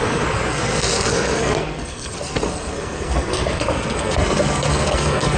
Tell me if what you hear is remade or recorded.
remade